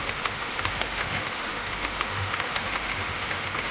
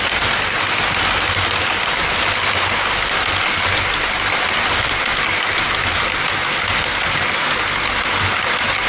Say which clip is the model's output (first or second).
first